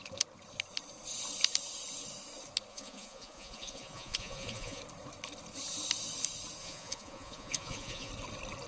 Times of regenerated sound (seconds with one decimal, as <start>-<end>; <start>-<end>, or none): 2.7-4.8; 6.6-8.1